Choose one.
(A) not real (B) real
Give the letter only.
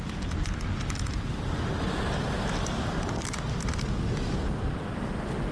B